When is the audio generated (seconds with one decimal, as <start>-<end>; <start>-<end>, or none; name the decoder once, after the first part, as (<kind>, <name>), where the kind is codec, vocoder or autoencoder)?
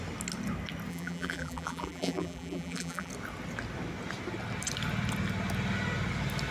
0.9-3.1 (vocoder, BigVGAN v2)